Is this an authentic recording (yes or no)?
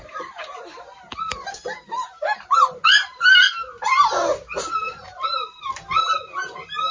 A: yes